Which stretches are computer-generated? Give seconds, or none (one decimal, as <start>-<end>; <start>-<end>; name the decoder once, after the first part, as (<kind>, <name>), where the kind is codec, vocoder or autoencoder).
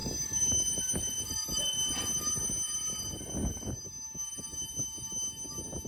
none